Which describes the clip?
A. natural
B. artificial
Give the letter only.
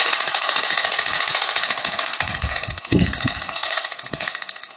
B